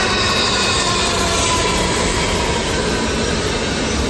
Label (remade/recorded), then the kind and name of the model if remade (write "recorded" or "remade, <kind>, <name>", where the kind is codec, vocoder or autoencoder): recorded